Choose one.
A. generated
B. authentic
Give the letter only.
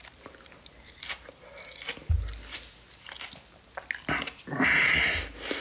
B